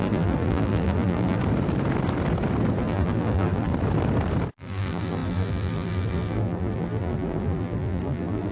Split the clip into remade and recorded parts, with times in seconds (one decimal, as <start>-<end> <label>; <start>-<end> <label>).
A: 0.0-1.4 remade; 1.4-2.8 recorded; 2.8-3.7 remade; 3.7-4.5 recorded; 4.5-8.5 remade